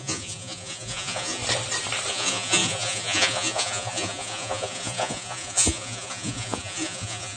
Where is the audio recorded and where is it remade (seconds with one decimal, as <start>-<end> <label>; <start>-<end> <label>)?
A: 0.0-1.4 remade; 1.4-2.1 recorded; 2.1-7.4 remade